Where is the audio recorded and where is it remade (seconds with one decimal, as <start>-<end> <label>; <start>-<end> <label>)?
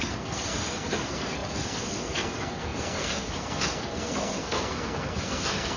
0.0-5.8 remade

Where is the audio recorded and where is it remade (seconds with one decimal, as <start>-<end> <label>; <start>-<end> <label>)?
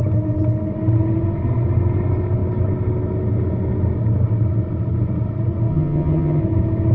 0.0-5.7 recorded; 5.7-6.4 remade; 6.4-6.9 recorded